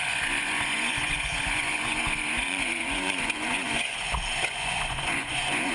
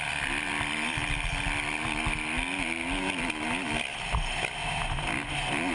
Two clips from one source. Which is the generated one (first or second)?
first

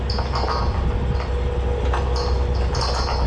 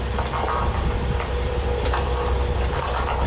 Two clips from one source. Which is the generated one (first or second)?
second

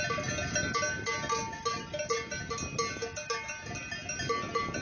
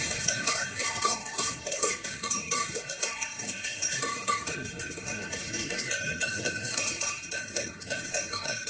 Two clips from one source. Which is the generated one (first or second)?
second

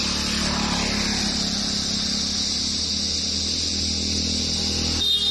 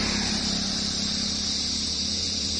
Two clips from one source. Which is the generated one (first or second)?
second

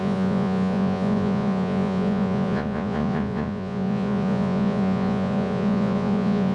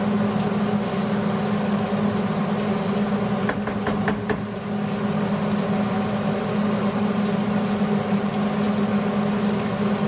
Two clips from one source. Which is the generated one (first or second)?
first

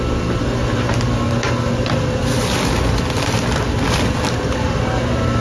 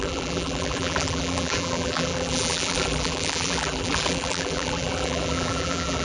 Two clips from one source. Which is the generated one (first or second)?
second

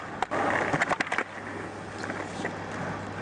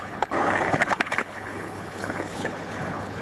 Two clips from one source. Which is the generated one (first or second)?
second